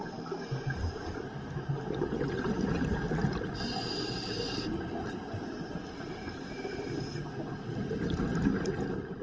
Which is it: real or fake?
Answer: real